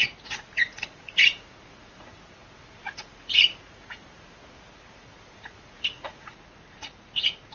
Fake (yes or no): yes